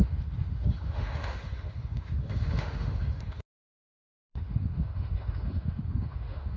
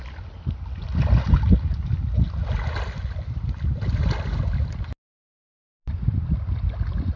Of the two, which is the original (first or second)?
second